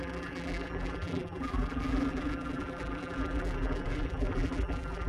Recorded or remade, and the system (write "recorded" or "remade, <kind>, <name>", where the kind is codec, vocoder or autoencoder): remade, vocoder, BigVGAN v2